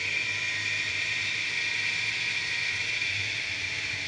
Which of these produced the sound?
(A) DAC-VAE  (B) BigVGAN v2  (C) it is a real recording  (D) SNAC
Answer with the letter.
B